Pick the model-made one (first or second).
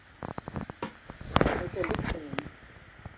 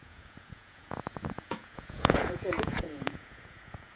second